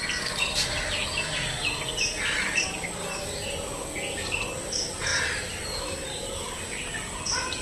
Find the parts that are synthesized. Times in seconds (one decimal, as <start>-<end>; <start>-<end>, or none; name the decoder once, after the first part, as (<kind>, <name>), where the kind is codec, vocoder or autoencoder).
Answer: none